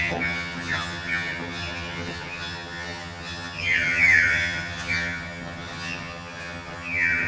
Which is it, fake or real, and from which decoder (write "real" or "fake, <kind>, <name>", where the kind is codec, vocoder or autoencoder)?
fake, vocoder, HiFi-GAN